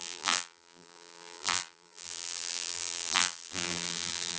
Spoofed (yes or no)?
yes